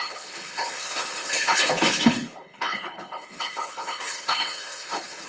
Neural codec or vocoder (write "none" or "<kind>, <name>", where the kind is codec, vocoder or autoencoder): codec, HILCodec